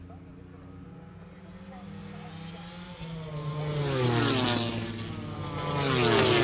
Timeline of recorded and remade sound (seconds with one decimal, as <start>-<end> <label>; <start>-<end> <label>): 0.0-6.4 recorded